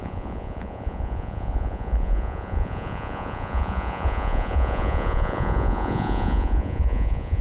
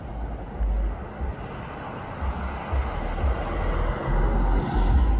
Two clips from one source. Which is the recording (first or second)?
second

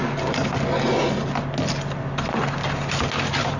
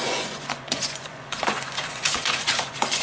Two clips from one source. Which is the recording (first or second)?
first